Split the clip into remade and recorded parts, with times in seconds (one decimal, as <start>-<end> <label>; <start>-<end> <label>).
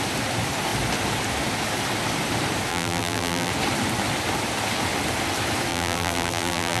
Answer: 0.0-2.7 recorded; 2.7-3.5 remade; 3.5-5.7 recorded; 5.7-6.8 remade